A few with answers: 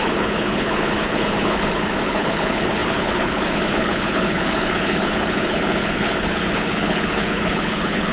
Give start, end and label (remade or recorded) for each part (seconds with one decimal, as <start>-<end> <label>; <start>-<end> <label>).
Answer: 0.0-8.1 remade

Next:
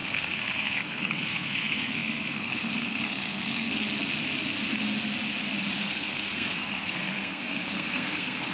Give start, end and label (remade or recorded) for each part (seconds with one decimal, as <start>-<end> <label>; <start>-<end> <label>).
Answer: 0.0-3.7 remade; 3.7-5.8 recorded; 5.8-8.5 remade

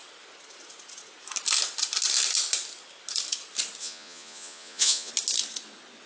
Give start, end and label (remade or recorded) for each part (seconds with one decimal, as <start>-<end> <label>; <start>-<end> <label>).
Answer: 0.0-3.8 recorded; 3.8-5.1 remade; 5.1-6.1 recorded